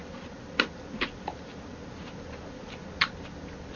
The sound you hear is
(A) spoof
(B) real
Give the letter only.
B